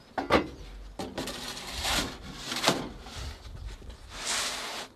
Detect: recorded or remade recorded